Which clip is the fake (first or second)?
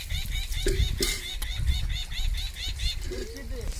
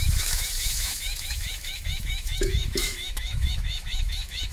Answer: second